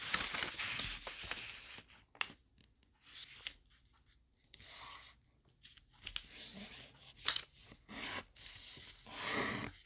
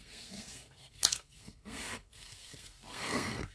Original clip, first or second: first